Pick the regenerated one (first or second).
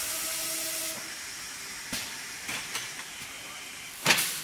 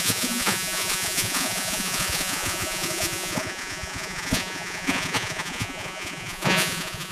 second